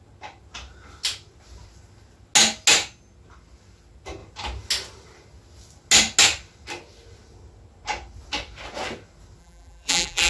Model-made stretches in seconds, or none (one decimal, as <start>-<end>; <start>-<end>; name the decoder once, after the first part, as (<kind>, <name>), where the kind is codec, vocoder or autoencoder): 9.4-10.3 (vocoder, BigVGAN v2)